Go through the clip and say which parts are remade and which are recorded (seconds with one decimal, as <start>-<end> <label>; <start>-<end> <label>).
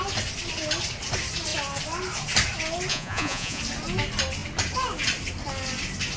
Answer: 0.0-2.9 recorded; 2.9-3.6 remade; 3.6-6.2 recorded